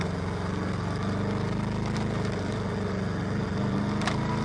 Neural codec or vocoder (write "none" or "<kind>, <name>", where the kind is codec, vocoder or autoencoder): none